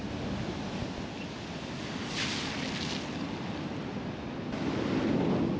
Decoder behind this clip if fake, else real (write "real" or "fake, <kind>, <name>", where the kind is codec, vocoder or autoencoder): real